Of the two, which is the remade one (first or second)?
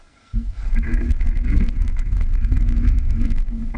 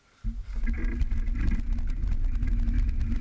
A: first